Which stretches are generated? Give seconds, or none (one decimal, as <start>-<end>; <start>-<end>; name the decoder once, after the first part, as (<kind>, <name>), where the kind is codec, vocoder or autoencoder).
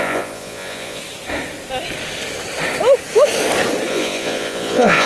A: 0.0-1.0 (vocoder, Vocos); 3.9-5.0